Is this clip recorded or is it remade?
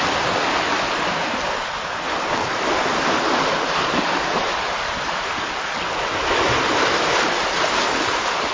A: recorded